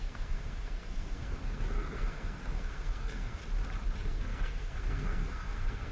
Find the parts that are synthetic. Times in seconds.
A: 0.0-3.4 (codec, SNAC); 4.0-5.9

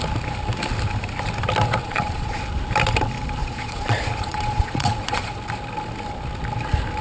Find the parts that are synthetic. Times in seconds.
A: 1.8-2.4 (vocoder, Vocos); 3.4-5.3

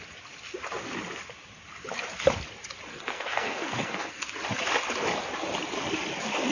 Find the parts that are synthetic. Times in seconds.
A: 2.9-4.3 (codec, SNAC)

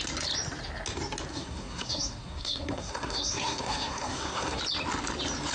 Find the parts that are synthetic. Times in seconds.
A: 1.3-4.6 (codec, SNAC)

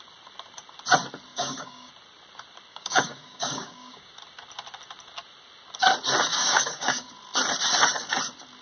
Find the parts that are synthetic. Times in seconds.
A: 1.3-1.9 (codec, DAC); 2.7-4.1; 6.3-7.1